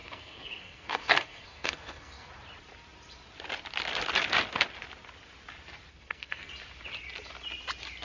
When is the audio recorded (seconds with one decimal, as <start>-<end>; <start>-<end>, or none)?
2.3-5.9; 6.5-8.0